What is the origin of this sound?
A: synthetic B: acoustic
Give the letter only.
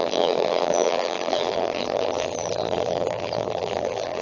A